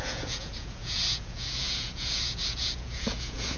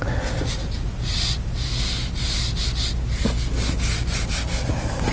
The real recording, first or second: second